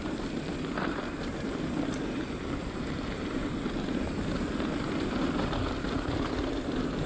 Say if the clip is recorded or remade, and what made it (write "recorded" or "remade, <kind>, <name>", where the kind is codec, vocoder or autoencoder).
recorded